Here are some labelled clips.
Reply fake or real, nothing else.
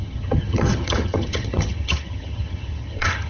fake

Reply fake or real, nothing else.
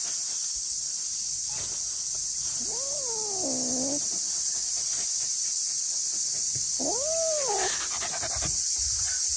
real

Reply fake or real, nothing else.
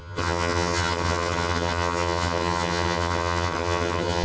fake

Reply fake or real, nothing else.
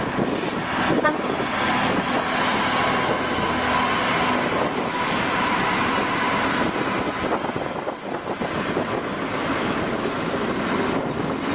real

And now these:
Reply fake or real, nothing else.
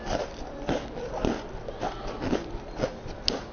real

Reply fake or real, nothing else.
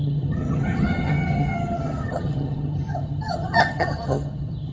fake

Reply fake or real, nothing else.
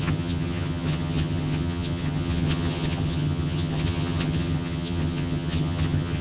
fake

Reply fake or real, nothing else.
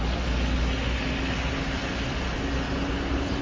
real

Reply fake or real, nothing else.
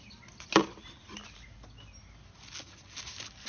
real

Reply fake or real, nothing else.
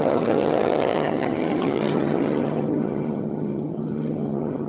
fake